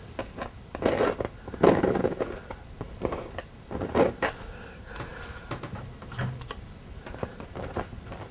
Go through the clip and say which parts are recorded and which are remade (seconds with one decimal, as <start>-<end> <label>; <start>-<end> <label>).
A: 0.0-8.3 recorded